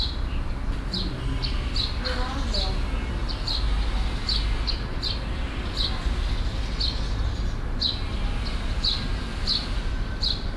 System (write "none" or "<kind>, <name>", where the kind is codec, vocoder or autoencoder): none